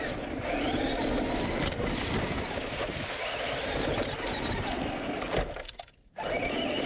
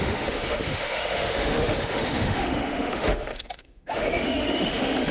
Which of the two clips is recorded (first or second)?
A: first